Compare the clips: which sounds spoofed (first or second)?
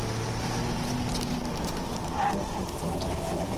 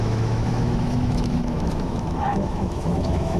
second